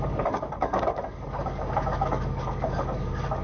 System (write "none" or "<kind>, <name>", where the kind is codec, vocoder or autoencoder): codec, DAC